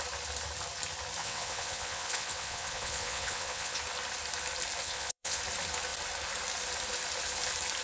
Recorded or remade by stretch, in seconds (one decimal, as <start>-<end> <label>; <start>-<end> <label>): 0.0-1.2 recorded; 1.2-3.8 remade; 3.8-4.8 recorded; 4.8-5.4 remade; 5.4-7.8 recorded